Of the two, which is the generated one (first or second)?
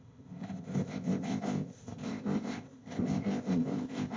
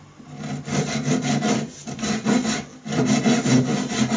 first